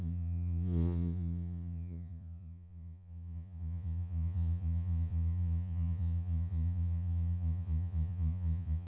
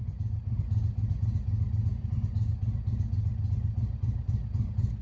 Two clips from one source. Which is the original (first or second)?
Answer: second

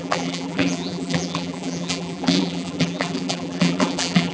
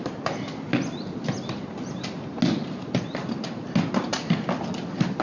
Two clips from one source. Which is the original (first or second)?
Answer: second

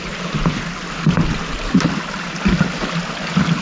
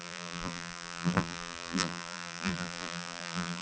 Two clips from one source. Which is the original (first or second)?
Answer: first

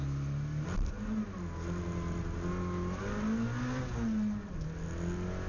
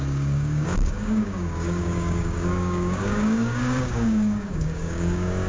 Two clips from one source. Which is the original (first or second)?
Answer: first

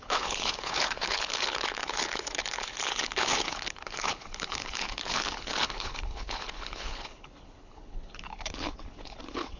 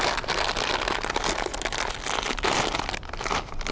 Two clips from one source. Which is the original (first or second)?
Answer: second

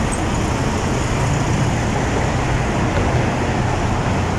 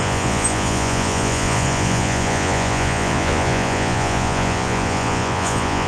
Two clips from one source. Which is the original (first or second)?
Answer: first